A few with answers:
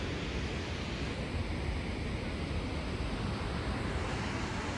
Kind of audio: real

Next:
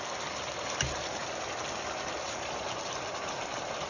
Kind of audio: real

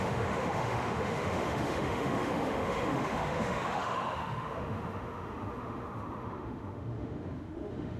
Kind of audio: fake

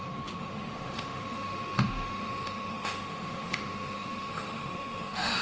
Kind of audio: fake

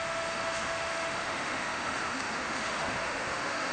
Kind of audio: fake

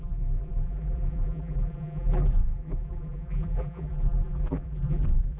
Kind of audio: fake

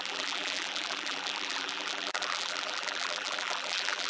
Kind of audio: fake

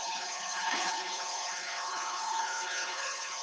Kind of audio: fake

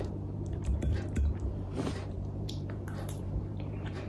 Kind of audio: fake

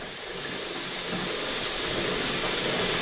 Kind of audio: real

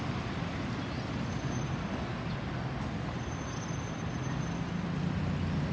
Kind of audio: real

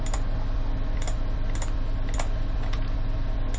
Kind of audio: real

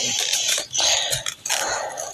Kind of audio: real